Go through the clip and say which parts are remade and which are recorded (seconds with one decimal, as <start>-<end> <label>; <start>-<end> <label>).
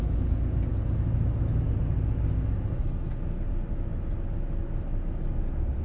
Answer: 0.0-5.8 recorded